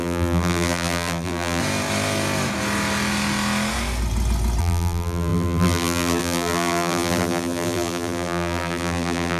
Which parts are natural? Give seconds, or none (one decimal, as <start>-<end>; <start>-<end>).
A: 1.6-4.6